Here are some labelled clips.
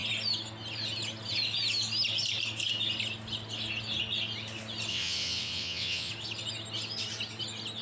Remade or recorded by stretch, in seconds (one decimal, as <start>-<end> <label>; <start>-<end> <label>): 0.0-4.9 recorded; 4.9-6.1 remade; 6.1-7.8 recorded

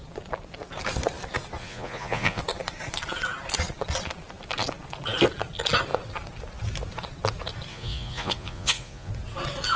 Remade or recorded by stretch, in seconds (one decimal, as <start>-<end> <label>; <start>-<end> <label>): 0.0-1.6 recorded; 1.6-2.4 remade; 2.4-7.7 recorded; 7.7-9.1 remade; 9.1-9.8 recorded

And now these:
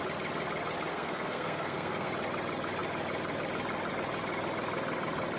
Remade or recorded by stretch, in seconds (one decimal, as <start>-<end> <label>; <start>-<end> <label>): 0.0-0.9 recorded; 0.9-2.1 remade; 2.1-5.4 recorded